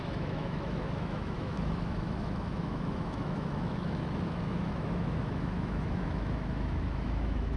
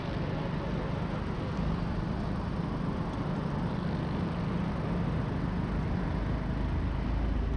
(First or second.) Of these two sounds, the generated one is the first